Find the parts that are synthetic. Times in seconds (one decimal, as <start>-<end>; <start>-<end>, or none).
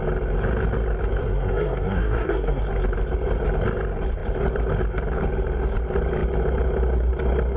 1.2-2.6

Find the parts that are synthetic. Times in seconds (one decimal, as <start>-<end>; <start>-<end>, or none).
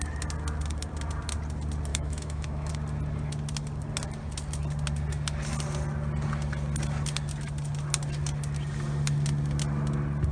1.9-2.7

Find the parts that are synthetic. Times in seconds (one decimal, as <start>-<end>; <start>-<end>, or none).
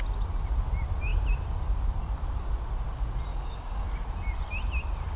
3.3-3.9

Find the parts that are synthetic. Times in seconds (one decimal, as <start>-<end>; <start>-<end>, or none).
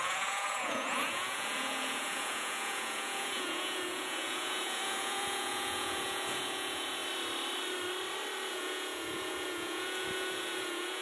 0.0-7.0; 8.5-11.0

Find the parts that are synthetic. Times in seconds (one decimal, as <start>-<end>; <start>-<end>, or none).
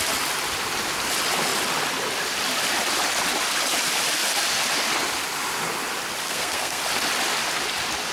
6.2-6.8